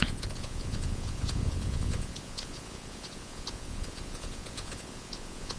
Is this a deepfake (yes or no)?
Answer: yes